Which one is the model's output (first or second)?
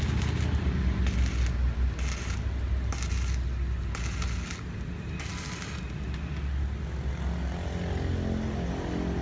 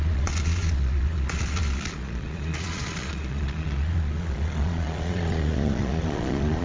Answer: second